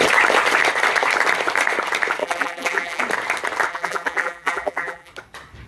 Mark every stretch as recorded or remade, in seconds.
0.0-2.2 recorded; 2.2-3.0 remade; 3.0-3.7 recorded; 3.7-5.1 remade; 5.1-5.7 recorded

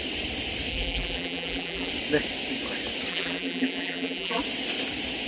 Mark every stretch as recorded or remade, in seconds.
0.0-0.7 recorded; 0.7-1.9 remade; 1.9-3.1 recorded; 3.1-4.4 remade; 4.4-5.3 recorded

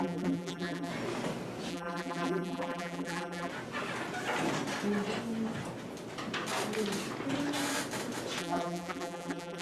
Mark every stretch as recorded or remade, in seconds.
0.0-0.9 remade; 0.9-1.7 recorded; 1.7-3.5 remade; 3.5-8.4 recorded; 8.4-9.6 remade

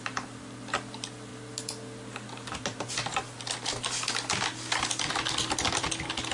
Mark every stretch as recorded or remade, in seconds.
0.0-6.3 recorded